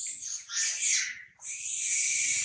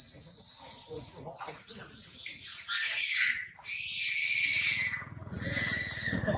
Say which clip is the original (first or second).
first